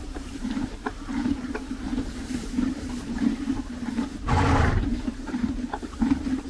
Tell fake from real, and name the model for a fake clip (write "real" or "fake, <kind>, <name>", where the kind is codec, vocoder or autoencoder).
fake, vocoder, BigVGAN v2